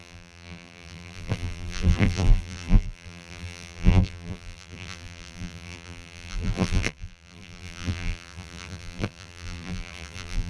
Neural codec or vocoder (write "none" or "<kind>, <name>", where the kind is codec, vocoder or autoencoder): vocoder, BigVGAN v2